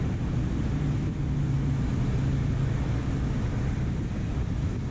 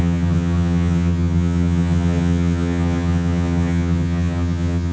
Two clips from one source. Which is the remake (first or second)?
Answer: second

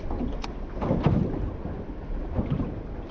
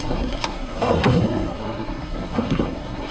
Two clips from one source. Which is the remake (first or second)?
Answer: second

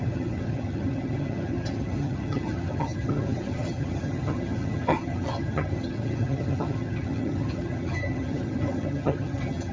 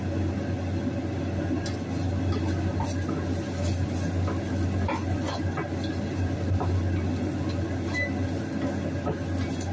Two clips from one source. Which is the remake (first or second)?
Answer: first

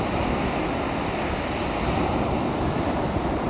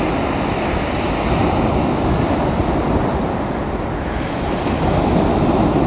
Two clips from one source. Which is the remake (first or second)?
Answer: first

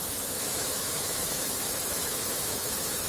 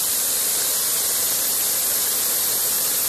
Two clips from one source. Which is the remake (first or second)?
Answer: first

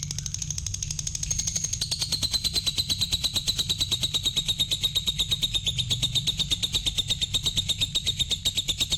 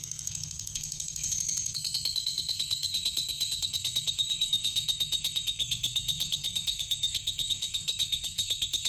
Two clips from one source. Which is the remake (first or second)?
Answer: second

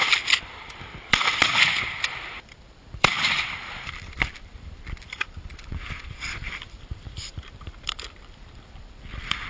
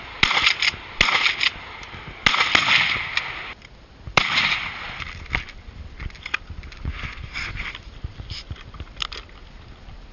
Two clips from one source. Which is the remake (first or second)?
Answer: first